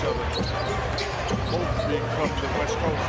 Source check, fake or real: real